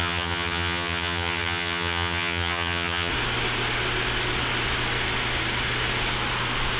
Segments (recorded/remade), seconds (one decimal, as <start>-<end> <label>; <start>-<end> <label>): 0.0-3.1 remade; 3.1-6.8 recorded